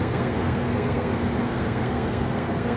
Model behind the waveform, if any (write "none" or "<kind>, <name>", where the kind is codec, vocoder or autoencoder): codec, SNAC